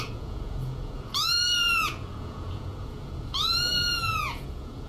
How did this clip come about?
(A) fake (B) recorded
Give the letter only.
A